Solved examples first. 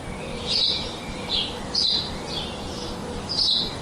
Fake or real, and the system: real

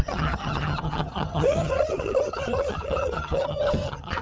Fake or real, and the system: fake, vocoder, HiFi-GAN